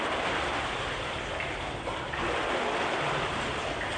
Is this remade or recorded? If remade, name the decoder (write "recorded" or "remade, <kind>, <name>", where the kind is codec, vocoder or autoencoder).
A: recorded